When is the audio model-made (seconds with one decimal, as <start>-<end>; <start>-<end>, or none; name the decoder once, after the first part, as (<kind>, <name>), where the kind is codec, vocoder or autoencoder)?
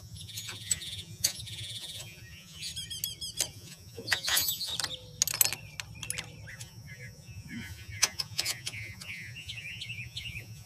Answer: 0.0-2.7 (vocoder, Vocos); 3.5-4.7; 6.5-10.7